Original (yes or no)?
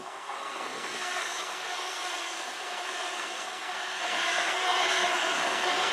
no